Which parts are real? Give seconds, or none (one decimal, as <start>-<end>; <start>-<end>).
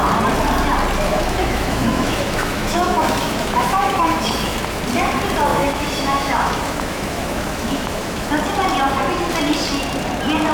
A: 0.0-1.1; 4.8-5.5; 8.3-10.5